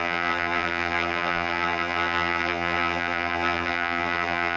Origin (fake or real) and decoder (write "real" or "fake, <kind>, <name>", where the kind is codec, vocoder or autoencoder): fake, vocoder, BigVGAN v2